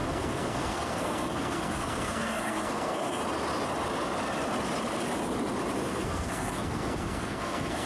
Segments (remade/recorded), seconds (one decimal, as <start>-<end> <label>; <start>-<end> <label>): 0.0-3.2 remade; 3.2-5.9 recorded; 5.9-7.9 remade